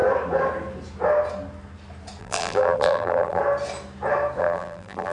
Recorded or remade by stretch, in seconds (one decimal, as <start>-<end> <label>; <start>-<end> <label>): 0.0-2.2 recorded; 2.2-3.4 remade; 3.4-4.4 recorded; 4.4-5.1 remade